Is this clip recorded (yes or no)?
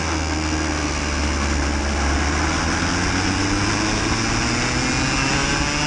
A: yes